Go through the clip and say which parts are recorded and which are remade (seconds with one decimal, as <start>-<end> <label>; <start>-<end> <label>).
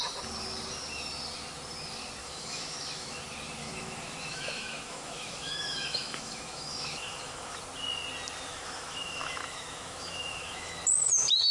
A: 0.0-2.2 recorded; 2.2-3.2 remade; 3.2-3.6 recorded; 3.6-7.6 remade; 7.6-8.5 recorded; 8.5-10.8 remade; 10.8-11.5 recorded